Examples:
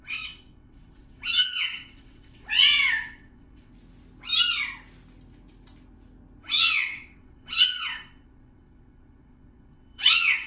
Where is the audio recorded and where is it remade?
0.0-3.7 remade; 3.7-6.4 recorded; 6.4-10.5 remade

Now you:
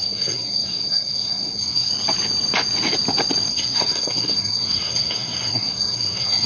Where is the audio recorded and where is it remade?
0.0-1.9 remade; 1.9-3.5 recorded; 3.5-6.5 remade

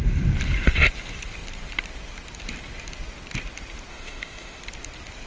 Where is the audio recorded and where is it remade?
0.0-3.9 recorded; 3.9-4.6 remade; 4.6-5.3 recorded

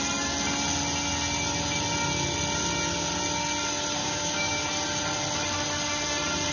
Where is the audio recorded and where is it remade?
0.0-4.0 recorded; 4.0-4.6 remade; 4.6-6.5 recorded

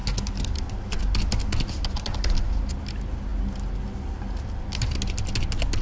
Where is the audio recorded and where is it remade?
0.0-5.8 recorded

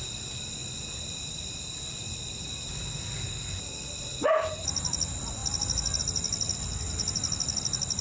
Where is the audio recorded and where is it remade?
0.0-8.0 recorded

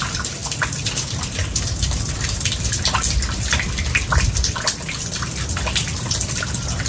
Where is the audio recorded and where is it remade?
0.0-6.9 recorded

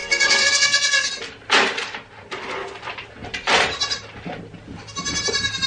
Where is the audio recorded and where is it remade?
0.0-1.1 remade; 1.1-5.7 recorded